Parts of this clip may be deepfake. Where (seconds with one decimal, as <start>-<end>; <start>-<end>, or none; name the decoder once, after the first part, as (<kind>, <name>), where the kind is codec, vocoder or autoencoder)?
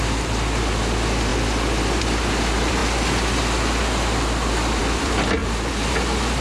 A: 0.0-2.8 (vocoder, BigVGAN v2); 4.8-5.4